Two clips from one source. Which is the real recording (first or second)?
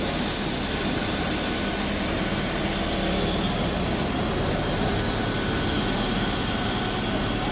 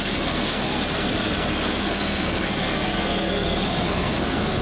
first